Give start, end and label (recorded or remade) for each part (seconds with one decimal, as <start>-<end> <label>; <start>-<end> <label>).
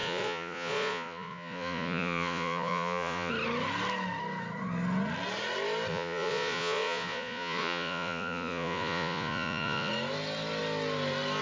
0.0-3.3 remade; 3.3-5.9 recorded; 5.9-9.9 remade; 9.9-11.4 recorded